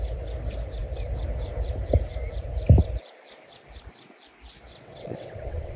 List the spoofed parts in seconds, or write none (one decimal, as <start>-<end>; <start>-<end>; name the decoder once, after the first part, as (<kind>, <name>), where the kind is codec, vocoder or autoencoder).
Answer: 4.7-5.8 (vocoder, WaveNeXt)